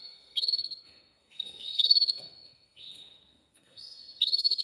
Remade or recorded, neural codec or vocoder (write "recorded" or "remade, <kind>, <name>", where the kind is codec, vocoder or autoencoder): remade, codec, SNAC